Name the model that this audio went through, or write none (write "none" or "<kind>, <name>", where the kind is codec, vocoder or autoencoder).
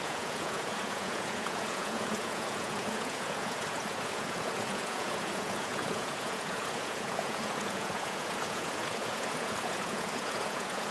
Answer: vocoder, Vocos